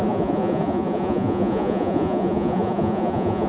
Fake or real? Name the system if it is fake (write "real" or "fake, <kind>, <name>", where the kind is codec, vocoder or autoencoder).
fake, vocoder, Vocos